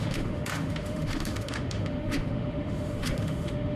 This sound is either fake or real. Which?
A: fake